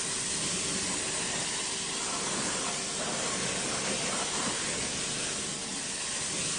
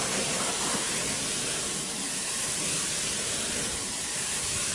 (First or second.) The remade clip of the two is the second